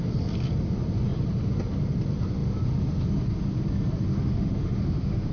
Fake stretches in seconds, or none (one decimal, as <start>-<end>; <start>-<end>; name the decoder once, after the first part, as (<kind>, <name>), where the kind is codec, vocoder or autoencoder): 4.1-5.3 (autoencoder, DAC-VAE)